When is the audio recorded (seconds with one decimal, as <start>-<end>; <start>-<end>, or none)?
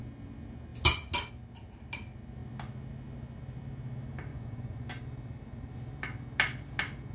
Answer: 0.0-4.3; 4.9-7.1